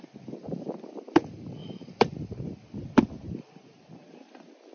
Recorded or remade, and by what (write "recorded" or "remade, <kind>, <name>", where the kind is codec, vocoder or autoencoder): recorded